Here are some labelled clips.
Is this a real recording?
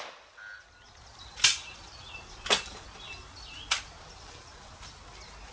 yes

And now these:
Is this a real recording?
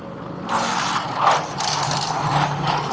yes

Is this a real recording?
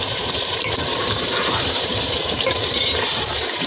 no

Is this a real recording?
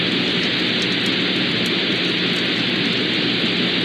yes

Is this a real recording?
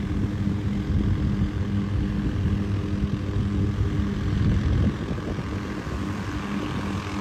yes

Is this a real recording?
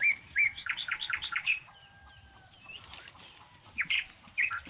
no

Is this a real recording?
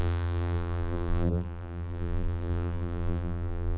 no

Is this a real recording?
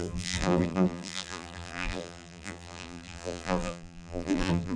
no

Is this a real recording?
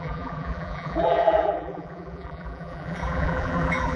no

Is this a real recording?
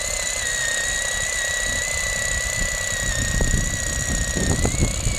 yes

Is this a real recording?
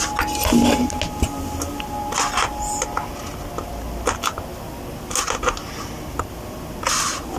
yes